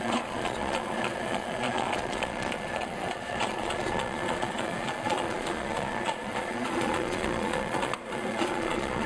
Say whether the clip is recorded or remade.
remade